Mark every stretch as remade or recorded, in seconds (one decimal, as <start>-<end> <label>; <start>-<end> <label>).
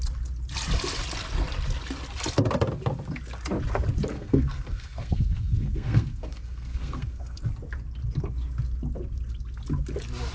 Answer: 0.0-4.1 recorded; 4.1-7.4 remade; 7.4-10.3 recorded